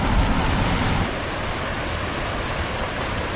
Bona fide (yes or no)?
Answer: yes